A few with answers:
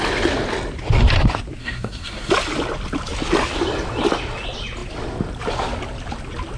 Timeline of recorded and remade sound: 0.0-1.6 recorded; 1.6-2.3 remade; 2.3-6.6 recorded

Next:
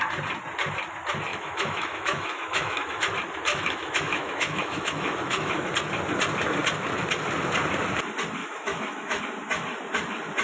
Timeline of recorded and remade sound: 0.0-1.3 recorded; 1.3-3.1 remade; 3.1-3.5 recorded; 3.5-5.7 remade; 5.7-8.4 recorded; 8.4-9.2 remade; 9.2-10.4 recorded

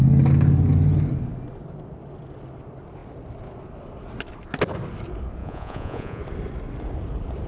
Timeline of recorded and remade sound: 0.0-5.4 recorded; 5.4-6.2 remade; 6.2-7.5 recorded

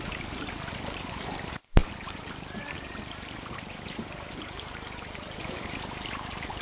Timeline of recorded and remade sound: 0.0-6.6 remade

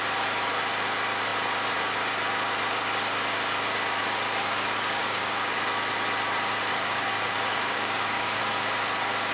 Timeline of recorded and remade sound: 0.0-5.0 recorded; 5.0-5.6 remade; 5.6-6.7 recorded; 6.7-8.4 remade; 8.4-9.3 recorded

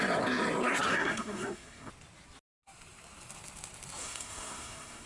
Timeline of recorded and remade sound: 0.0-0.9 recorded; 0.9-1.9 remade; 1.9-4.0 recorded; 4.0-5.1 remade

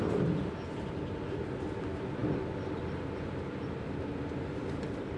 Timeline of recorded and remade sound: 0.0-5.2 recorded

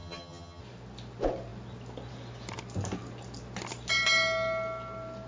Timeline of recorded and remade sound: 0.0-0.6 remade; 0.6-5.3 recorded